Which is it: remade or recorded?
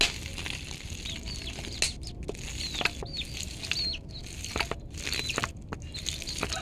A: recorded